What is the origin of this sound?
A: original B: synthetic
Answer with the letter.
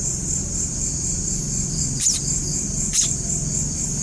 A